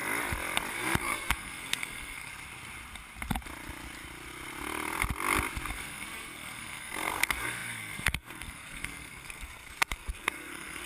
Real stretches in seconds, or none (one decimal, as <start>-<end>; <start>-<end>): 0.0-0.7; 2.3-5.7